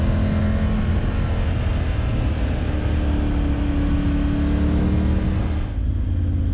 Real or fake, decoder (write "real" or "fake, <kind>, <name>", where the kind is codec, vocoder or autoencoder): real